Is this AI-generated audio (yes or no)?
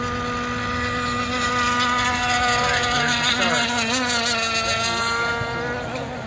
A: no